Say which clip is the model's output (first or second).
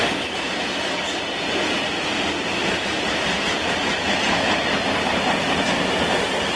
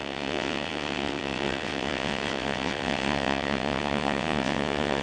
second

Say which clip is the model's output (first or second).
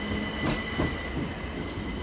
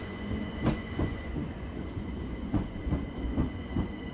second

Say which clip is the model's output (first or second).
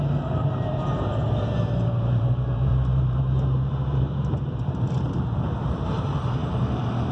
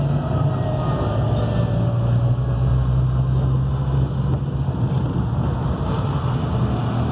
first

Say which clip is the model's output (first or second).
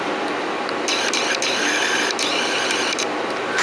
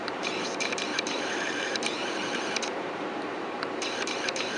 second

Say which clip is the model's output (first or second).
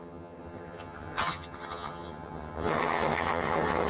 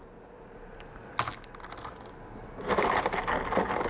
first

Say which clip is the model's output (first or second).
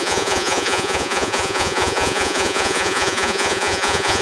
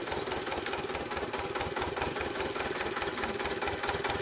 first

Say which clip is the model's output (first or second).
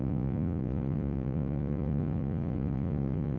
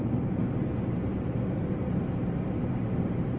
first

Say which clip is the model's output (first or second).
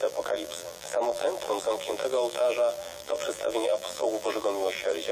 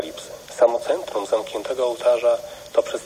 first